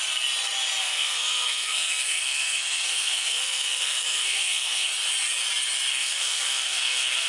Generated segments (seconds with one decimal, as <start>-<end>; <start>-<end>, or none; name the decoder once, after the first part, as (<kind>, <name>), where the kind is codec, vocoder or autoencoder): 0.8-4.9 (codec, SNAC); 5.9-7.3